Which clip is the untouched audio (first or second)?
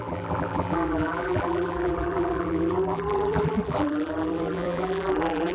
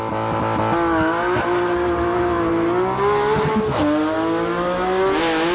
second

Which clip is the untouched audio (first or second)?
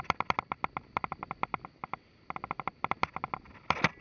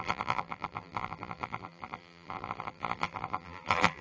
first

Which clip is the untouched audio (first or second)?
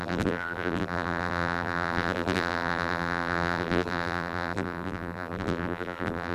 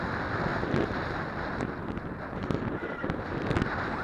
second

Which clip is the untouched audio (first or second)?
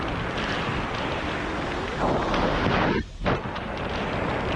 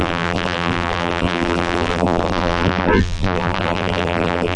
first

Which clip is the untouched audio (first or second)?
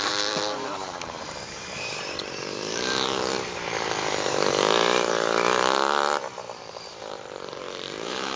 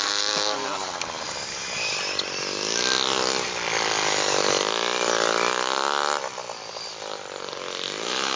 second